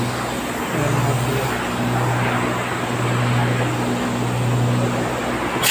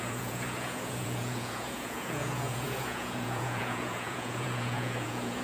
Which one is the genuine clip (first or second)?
first